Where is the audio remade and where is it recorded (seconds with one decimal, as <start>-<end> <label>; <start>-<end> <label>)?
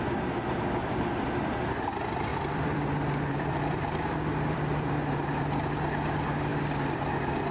0.0-2.3 recorded; 2.3-5.0 remade; 5.0-6.5 recorded; 6.5-7.0 remade; 7.0-7.5 recorded